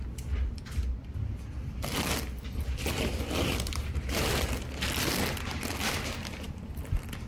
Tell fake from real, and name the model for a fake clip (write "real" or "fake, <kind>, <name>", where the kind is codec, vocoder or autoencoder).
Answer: real